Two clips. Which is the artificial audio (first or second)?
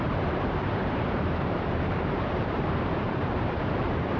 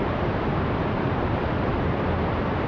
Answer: first